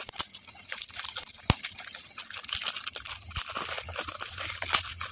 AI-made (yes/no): no